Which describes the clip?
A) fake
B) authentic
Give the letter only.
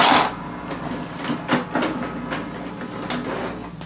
B